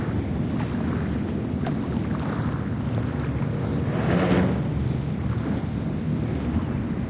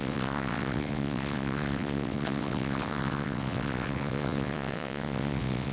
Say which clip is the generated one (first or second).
second